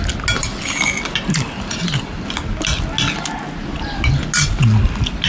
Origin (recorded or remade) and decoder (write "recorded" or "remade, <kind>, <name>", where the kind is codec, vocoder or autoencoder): recorded